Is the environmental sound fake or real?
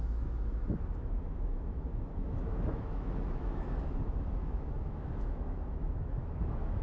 fake